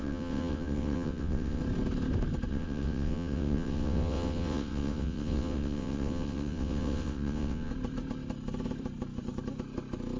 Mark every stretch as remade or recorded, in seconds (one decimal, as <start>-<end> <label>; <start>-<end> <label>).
0.0-1.6 remade; 1.6-2.5 recorded; 2.5-7.7 remade; 7.7-10.2 recorded